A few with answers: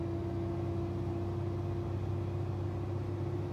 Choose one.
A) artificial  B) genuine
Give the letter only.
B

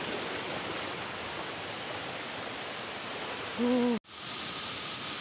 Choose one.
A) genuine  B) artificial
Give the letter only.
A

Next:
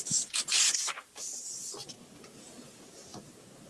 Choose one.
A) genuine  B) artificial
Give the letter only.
A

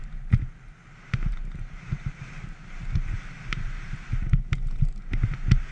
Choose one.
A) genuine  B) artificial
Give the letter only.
A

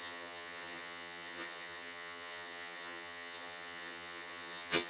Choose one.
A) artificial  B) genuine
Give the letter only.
A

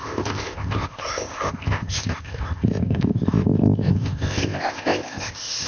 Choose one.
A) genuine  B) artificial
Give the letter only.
B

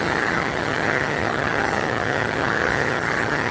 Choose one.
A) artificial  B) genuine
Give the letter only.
A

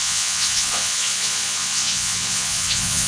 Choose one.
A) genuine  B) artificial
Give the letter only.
B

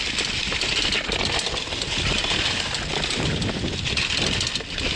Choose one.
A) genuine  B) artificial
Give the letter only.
A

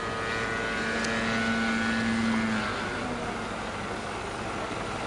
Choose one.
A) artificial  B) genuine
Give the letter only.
B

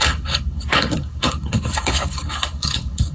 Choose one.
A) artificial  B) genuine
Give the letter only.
A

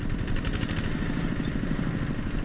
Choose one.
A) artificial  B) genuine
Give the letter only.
B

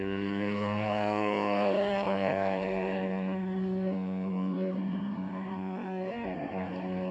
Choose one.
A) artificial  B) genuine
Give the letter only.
A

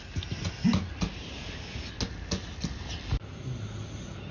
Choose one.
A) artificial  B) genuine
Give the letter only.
B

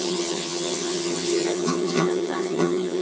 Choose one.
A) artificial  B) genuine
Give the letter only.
A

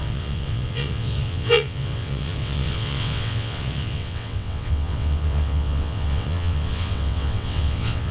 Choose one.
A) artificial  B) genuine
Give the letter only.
A